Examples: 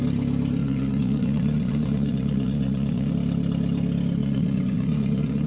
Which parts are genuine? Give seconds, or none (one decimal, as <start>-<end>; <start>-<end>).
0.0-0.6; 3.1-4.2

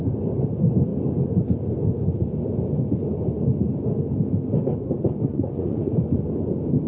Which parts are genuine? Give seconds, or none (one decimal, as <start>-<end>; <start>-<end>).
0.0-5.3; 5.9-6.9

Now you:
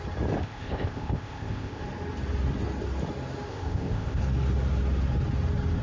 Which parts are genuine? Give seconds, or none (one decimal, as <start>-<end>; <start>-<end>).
0.0-0.4; 1.8-3.5; 4.2-5.8

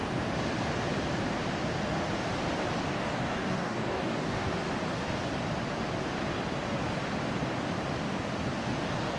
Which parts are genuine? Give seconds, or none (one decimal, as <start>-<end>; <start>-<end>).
0.0-2.9; 4.5-9.2